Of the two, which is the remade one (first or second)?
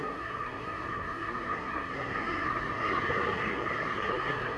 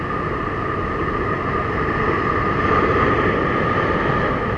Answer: first